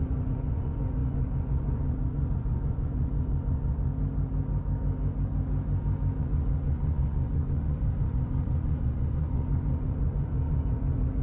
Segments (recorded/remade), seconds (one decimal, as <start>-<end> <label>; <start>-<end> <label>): 0.0-3.9 remade; 3.9-6.2 recorded; 6.2-11.2 remade